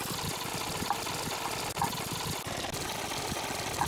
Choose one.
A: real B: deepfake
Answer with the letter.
A